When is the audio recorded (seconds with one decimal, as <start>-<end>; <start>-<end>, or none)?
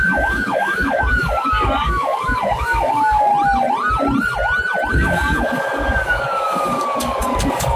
3.3-4.9